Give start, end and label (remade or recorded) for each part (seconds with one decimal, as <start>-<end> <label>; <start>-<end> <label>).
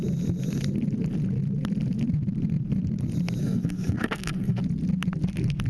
0.0-3.4 recorded; 3.4-4.6 remade; 4.6-5.7 recorded